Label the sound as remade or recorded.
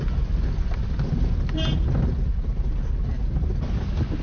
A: recorded